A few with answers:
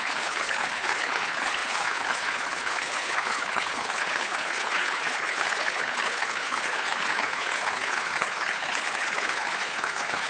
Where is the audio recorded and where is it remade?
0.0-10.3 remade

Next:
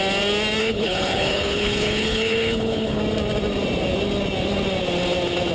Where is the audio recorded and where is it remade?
0.0-0.6 recorded; 0.6-3.0 remade; 3.0-5.5 recorded

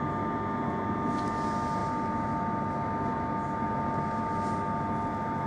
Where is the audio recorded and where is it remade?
0.0-5.5 recorded

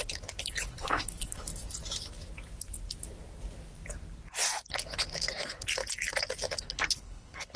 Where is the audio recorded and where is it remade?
0.0-1.5 remade; 1.5-4.7 recorded; 4.7-5.8 remade; 5.8-6.5 recorded; 6.5-7.6 remade

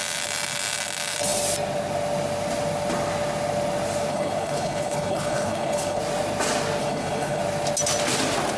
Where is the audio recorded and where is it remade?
0.0-4.1 recorded; 4.1-6.0 remade; 6.0-6.8 recorded; 6.8-7.4 remade; 7.4-8.6 recorded

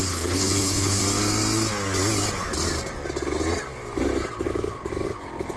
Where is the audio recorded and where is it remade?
0.0-1.0 remade; 1.0-5.6 recorded

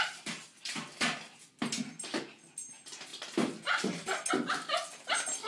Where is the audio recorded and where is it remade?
0.0-5.5 recorded